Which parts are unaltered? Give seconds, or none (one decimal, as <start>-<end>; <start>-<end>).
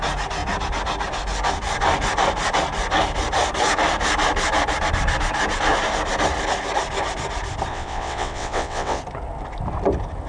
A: 0.0-7.7; 9.0-10.3